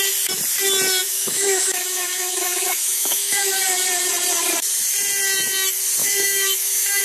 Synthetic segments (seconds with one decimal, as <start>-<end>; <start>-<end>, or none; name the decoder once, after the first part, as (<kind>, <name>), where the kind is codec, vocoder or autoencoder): 1.0-3.6 (autoencoder, DAC-VAE); 6.0-7.0